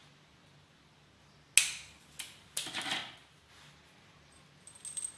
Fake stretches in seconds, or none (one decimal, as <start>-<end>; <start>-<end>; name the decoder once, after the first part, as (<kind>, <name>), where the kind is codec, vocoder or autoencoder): none